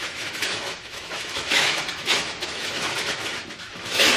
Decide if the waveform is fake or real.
fake